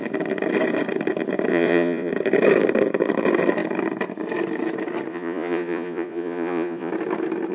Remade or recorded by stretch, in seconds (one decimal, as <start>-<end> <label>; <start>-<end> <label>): 0.0-1.5 recorded; 1.5-2.1 remade; 2.1-5.1 recorded; 5.1-6.9 remade; 6.9-7.5 recorded